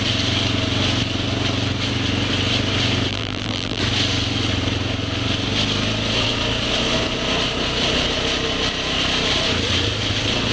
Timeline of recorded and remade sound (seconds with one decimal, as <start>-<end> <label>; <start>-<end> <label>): 0.0-3.1 recorded; 3.1-3.8 remade; 3.8-10.5 recorded